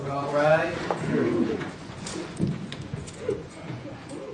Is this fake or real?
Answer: fake